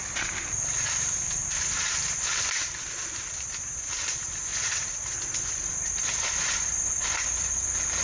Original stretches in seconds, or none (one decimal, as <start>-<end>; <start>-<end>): 0.0-4.5; 5.2-8.0